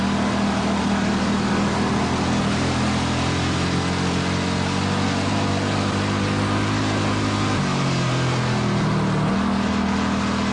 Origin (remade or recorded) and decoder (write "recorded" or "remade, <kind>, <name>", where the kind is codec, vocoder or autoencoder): recorded